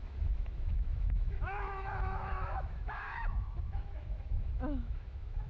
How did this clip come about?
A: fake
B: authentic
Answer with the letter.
A